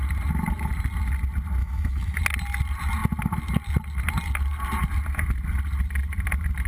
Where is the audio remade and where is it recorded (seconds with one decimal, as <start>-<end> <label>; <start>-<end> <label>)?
0.0-1.6 recorded; 1.6-2.2 remade; 2.2-6.7 recorded